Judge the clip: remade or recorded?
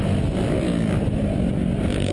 recorded